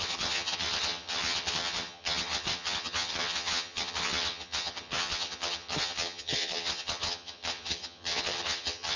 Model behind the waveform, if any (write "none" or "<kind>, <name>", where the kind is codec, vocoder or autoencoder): vocoder, HiFi-GAN